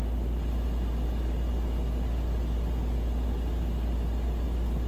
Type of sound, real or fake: real